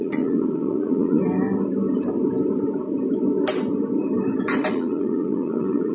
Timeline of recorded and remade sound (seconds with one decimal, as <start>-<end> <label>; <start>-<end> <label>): 0.0-1.2 remade; 1.2-4.7 recorded; 4.7-5.9 remade